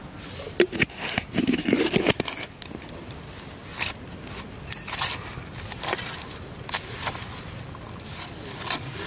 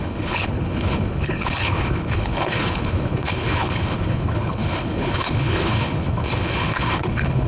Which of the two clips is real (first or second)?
first